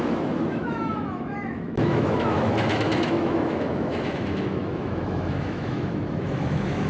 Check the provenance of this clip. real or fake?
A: fake